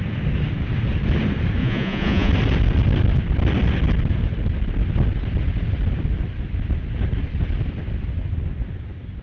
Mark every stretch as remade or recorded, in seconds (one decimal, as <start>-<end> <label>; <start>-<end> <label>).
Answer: 0.0-1.6 recorded; 1.6-2.3 remade; 2.3-9.2 recorded